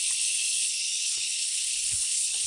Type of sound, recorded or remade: remade